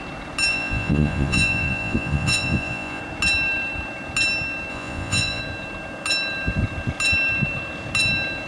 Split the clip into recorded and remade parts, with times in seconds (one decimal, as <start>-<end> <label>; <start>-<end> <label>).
0.0-0.5 recorded; 0.5-3.0 remade; 3.0-4.7 recorded; 4.7-5.4 remade; 5.4-8.5 recorded